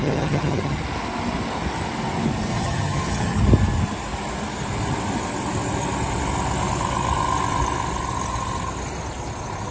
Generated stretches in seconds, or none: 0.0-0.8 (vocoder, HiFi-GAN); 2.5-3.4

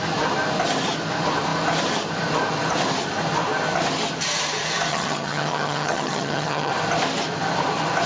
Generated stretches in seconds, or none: 4.9-6.7 (vocoder, HiFi-GAN)